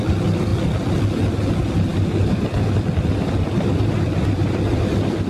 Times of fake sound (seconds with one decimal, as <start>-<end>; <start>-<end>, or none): 0.5-1.0; 1.9-4.6